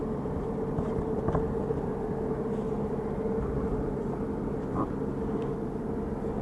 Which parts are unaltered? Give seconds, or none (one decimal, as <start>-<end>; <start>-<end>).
0.0-6.4